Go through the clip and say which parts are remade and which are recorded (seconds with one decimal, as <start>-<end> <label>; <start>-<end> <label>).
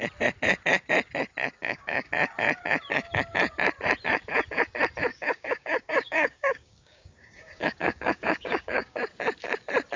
0.0-1.6 recorded; 1.6-2.1 remade; 2.1-5.1 recorded; 5.1-9.0 remade; 9.0-10.0 recorded